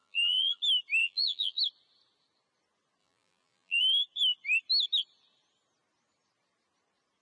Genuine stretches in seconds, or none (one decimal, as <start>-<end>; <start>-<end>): 0.6-1.0; 1.6-3.0; 3.8-7.2